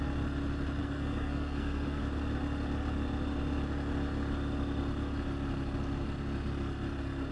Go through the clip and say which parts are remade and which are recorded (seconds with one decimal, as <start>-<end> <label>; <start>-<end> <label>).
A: 0.0-0.8 recorded; 0.8-2.0 remade; 2.0-7.3 recorded